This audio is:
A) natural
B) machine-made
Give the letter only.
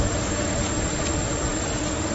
A